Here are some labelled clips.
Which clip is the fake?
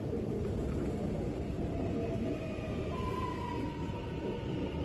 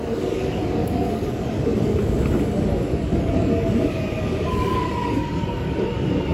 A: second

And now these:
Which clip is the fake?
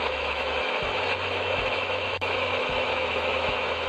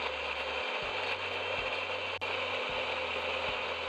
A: first